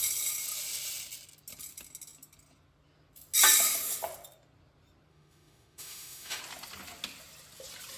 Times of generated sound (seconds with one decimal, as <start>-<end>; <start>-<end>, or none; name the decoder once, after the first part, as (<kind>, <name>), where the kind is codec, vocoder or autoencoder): 5.1-6.4 (autoencoder, DAC-VAE)

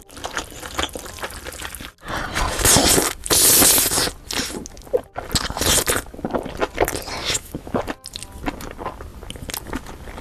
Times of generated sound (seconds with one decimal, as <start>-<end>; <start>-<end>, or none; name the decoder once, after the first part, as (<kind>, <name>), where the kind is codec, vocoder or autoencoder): 7.2-7.8 (autoencoder, DAC-VAE)

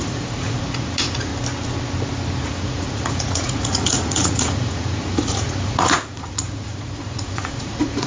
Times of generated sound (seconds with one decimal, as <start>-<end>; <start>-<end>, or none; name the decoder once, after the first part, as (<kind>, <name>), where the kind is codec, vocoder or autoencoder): 0.0-1.3 (vocoder, Vocos); 2.4-8.1

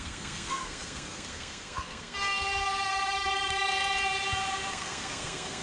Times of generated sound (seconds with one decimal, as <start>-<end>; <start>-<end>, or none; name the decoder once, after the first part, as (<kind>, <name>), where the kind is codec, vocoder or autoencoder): 0.0-3.7 (codec, SNAC); 4.7-5.6